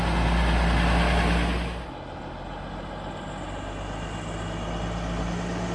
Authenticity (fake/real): real